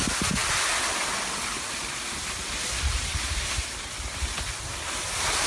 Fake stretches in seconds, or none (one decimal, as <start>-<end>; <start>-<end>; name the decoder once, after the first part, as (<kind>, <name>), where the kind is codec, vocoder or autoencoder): none

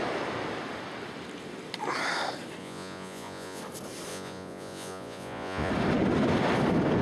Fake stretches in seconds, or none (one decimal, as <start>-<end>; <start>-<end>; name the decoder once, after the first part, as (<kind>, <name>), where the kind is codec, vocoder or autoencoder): 2.6-3.6 (vocoder, Vocos); 4.1-5.7